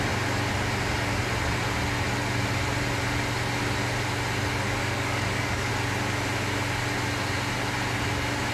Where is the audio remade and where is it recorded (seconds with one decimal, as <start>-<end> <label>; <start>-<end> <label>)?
0.0-4.8 recorded; 4.8-5.7 remade; 5.7-8.5 recorded